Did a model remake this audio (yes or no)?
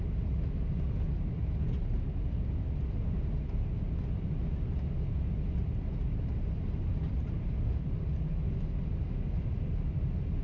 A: no